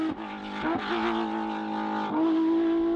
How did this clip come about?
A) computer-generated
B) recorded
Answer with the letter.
B